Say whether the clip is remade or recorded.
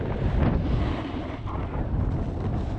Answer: recorded